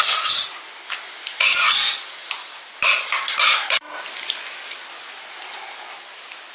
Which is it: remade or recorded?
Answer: recorded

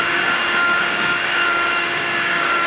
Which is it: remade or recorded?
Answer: remade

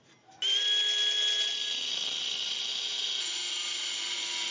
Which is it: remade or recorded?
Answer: recorded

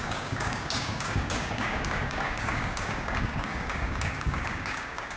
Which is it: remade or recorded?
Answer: remade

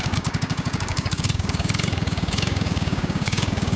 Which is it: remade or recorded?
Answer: remade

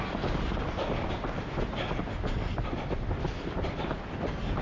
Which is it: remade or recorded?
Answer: recorded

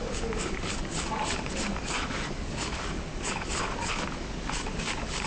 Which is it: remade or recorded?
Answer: remade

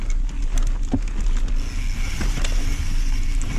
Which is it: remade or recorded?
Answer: recorded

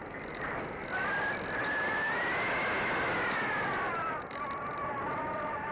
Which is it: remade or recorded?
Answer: recorded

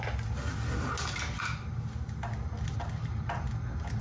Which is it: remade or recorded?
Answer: recorded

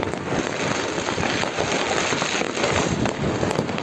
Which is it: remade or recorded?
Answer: recorded